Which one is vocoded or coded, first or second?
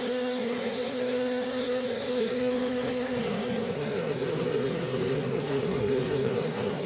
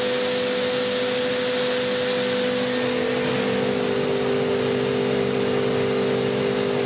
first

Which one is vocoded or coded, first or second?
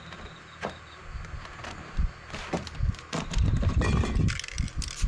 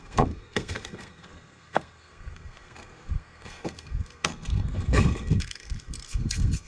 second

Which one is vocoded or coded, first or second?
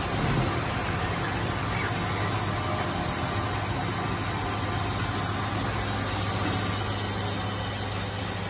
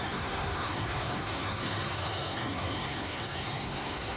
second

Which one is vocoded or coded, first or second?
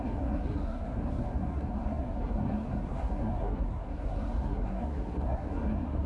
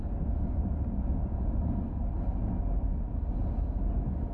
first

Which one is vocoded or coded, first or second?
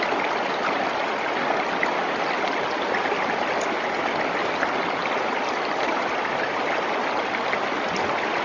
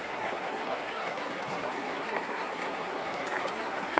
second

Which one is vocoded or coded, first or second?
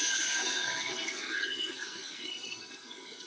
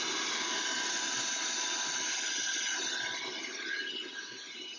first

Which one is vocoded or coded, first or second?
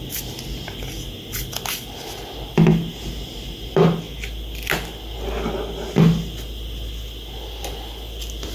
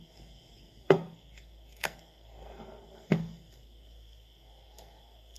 second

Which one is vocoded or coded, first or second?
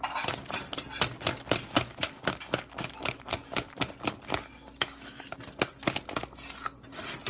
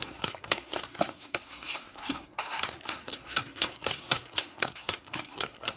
second